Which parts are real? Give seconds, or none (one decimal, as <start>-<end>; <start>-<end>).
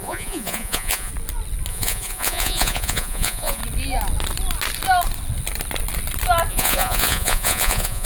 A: 1.1-1.7; 3.6-6.5